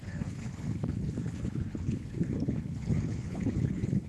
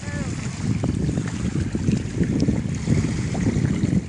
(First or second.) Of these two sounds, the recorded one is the second